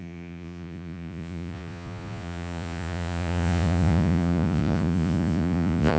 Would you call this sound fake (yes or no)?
yes